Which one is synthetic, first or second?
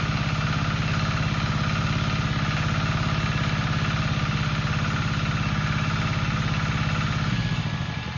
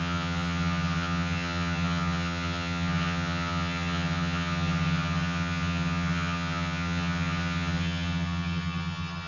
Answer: second